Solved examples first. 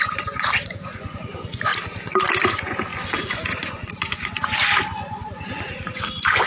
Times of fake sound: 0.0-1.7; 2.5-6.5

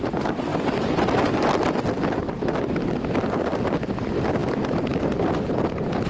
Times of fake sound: none

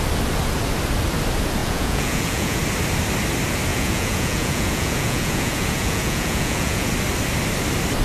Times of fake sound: 1.6-2.6; 3.7-6.9

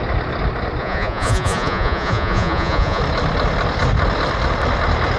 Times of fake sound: 0.8-3.0

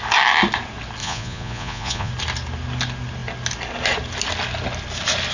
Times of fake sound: 1.0-2.1